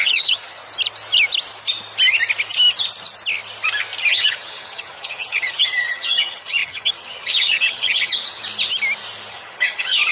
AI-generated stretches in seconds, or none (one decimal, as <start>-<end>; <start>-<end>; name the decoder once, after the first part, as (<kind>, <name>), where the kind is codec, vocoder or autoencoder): 0.0-0.6 (vocoder, HiFi-GAN); 4.1-8.4; 9.3-10.1